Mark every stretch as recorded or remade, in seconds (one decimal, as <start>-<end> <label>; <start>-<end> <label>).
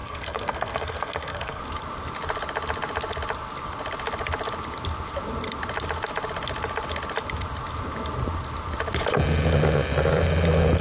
0.0-1.6 remade; 1.6-10.8 recorded